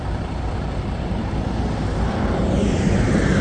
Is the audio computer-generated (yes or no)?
yes